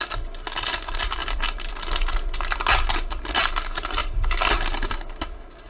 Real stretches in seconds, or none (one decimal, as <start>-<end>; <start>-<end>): 0.0-5.7